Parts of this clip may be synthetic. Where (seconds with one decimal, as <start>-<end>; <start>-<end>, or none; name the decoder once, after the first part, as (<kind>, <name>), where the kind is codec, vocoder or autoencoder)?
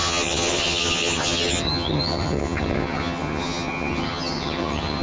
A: 0.0-5.0 (vocoder, HiFi-GAN)